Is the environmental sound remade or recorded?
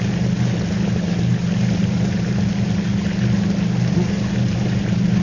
recorded